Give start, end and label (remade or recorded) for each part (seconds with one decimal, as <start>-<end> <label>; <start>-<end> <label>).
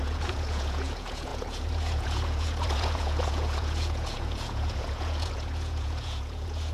0.0-6.7 remade